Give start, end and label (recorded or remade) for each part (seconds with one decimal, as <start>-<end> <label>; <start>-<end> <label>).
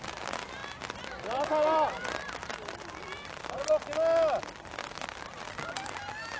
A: 0.0-6.4 recorded